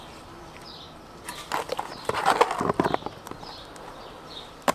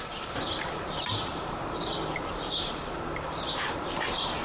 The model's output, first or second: second